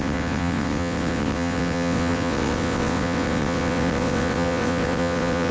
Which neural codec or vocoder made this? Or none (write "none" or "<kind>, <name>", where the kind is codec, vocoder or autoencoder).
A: vocoder, WaveNeXt